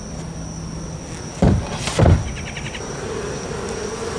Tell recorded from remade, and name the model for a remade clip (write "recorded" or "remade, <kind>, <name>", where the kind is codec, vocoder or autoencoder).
recorded